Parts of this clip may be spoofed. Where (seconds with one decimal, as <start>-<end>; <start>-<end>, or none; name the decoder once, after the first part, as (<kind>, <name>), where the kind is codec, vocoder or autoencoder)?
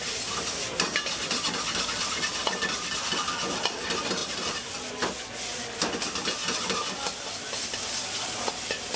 4.2-4.9 (vocoder, BigVGAN v2)